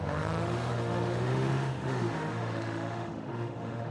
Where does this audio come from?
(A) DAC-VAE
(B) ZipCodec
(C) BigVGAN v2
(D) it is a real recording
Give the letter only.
A